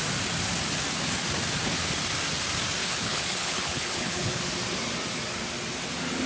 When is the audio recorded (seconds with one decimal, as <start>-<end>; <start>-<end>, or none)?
0.0-2.8; 4.4-6.3